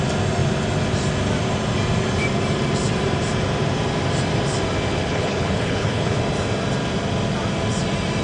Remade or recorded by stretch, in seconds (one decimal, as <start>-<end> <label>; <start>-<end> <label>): 0.0-4.9 recorded; 4.9-6.2 remade; 6.2-8.2 recorded